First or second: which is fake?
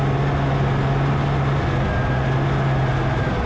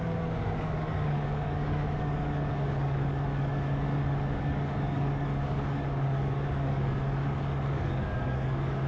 second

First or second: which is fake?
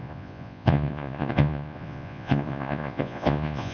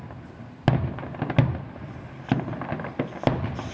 first